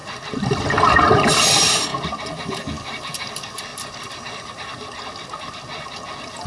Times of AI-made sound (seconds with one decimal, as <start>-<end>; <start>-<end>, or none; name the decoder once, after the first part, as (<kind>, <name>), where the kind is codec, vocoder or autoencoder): none